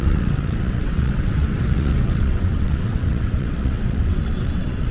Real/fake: fake